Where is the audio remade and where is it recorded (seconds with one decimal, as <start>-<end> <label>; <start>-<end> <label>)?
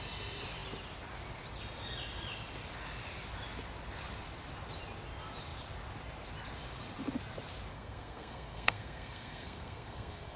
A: 0.0-7.7 recorded; 7.7-10.4 remade